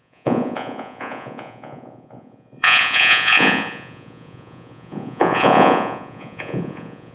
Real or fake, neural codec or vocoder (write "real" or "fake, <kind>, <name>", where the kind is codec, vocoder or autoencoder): fake, vocoder, Vocos